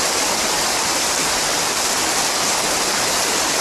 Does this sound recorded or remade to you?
recorded